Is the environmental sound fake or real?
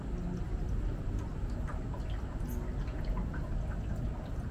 real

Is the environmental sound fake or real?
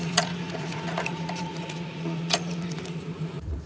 fake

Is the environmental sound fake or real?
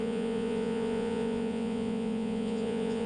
fake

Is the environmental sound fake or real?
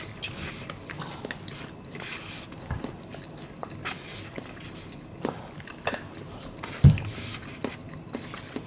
real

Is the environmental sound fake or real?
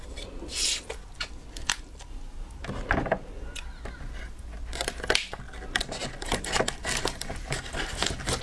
real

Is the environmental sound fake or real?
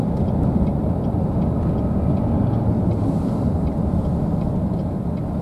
real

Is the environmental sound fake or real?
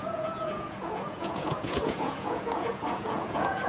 fake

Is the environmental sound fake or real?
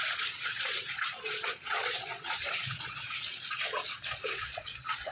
fake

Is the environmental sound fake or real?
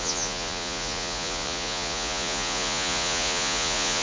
fake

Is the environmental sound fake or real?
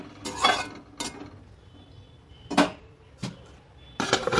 real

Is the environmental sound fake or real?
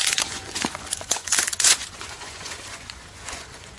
fake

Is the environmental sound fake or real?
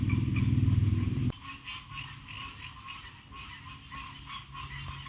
real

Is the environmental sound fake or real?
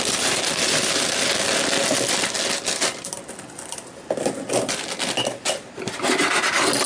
real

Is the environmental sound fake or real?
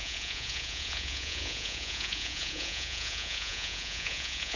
fake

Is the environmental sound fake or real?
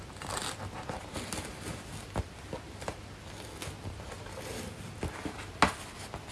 real